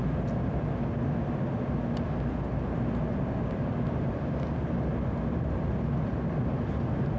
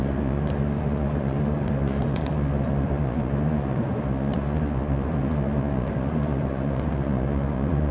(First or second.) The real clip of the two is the first